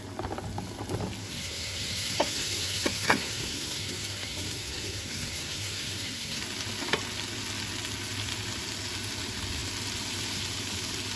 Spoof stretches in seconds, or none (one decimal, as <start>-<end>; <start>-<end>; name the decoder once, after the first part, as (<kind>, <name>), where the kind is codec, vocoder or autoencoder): 1.2-6.4 (codec, SNAC)